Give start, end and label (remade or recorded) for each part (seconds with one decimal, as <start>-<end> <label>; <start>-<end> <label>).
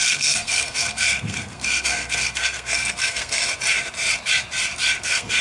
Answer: 0.0-3.5 remade; 3.5-5.0 recorded; 5.0-5.4 remade